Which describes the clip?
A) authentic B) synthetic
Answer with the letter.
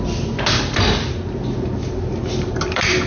A